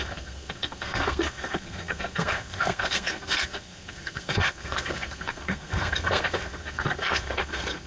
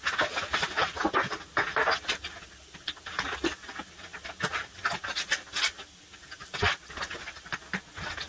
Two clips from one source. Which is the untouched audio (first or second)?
second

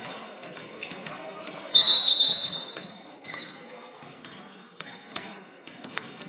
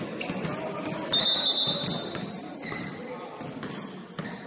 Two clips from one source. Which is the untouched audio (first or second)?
second